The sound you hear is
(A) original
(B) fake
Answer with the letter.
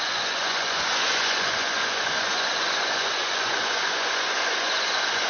B